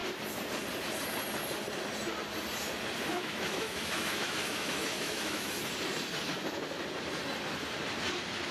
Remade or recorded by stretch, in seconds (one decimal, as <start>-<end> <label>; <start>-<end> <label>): 0.0-3.1 recorded; 3.1-5.6 remade; 5.6-8.5 recorded